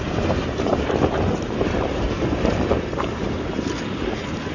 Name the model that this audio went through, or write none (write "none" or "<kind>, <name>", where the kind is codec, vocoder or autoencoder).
vocoder, BigVGAN v2